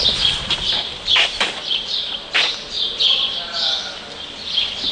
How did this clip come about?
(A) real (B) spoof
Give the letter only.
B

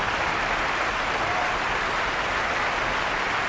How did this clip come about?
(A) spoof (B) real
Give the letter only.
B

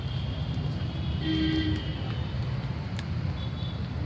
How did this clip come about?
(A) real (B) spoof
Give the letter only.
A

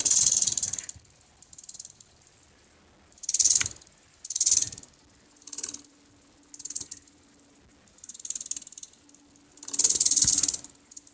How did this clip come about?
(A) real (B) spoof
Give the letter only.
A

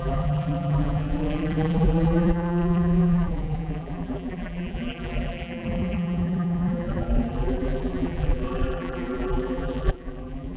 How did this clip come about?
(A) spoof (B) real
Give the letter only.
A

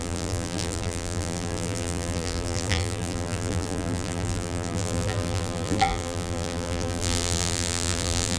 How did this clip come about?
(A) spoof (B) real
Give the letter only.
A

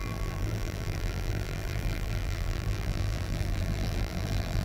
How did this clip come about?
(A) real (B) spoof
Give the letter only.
B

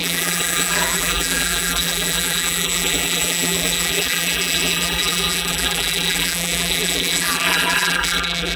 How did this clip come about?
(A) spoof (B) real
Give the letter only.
A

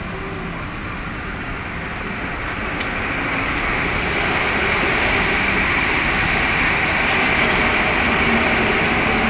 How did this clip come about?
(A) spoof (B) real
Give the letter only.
B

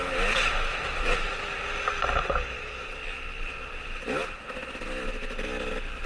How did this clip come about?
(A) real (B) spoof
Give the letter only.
A